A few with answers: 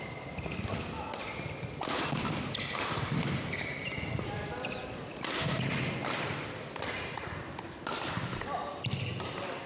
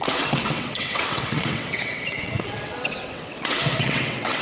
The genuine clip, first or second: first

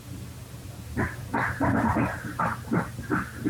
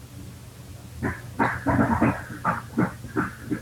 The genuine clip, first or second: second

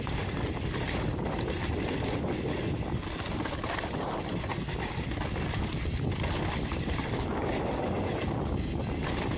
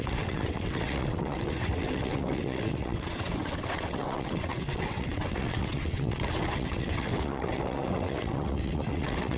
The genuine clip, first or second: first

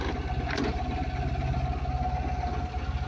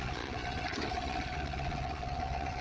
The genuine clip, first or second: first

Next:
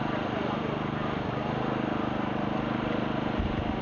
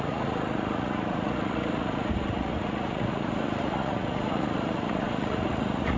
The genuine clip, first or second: first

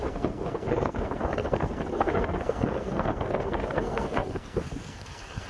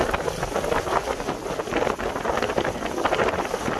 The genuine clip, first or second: second